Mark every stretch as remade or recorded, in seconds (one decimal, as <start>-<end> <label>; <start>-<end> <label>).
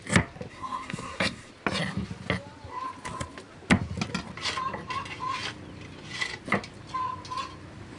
0.0-0.5 recorded; 0.5-1.5 remade; 1.5-8.0 recorded